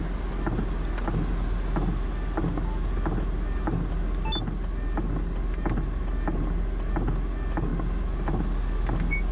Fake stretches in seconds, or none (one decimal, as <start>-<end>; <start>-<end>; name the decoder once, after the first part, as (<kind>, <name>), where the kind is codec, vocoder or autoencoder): none